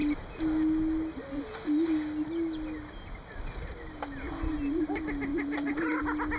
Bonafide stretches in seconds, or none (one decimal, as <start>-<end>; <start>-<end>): 0.0-5.3; 6.0-6.4